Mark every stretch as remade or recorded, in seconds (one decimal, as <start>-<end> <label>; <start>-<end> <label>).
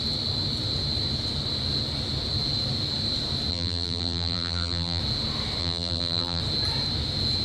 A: 0.0-3.5 recorded; 3.5-5.0 remade; 5.0-5.6 recorded; 5.6-6.4 remade; 6.4-7.4 recorded